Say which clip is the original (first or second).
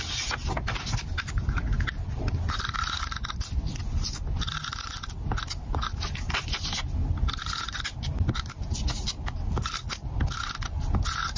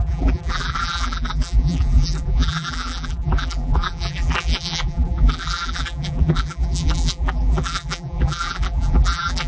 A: first